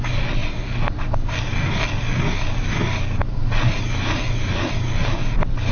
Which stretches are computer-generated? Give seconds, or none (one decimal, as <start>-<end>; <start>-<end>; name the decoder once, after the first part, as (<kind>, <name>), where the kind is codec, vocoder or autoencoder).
none